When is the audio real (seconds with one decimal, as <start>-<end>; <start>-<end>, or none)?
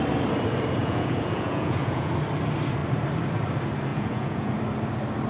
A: 0.0-0.8; 2.1-3.9; 4.6-5.3